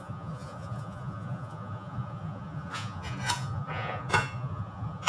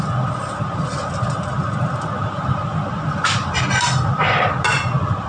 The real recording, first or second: second